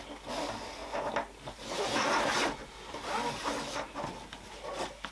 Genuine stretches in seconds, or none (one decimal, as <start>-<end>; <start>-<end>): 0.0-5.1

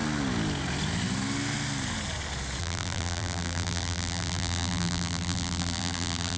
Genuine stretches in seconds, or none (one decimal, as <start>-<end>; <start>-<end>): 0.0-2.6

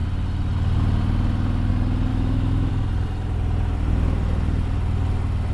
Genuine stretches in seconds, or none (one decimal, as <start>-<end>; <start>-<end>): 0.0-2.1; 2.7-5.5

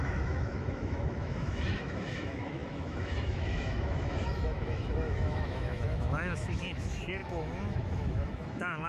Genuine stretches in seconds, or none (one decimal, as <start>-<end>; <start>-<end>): none